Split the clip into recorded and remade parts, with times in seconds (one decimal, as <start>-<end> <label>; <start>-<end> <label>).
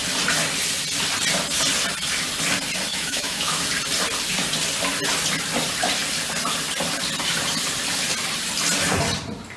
0.0-2.9 recorded; 2.9-3.6 remade; 3.6-9.6 recorded